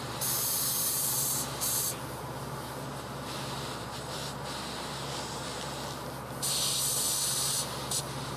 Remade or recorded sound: recorded